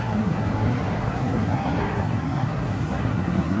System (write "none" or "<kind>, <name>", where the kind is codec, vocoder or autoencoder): codec, SNAC